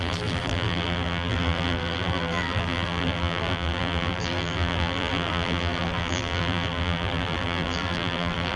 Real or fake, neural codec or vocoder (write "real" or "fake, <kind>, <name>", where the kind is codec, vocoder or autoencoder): fake, vocoder, BigVGAN v2